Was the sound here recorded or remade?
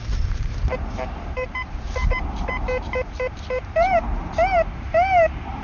remade